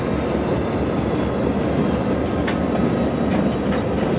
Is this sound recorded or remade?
recorded